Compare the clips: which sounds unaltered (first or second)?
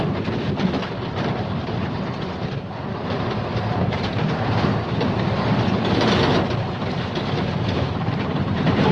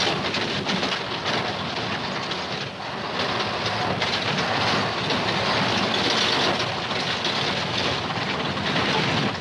second